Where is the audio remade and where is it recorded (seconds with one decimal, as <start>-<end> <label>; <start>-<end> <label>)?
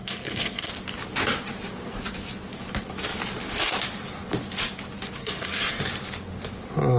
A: 0.0-0.7 remade; 0.7-5.2 recorded; 5.2-5.8 remade; 5.8-7.0 recorded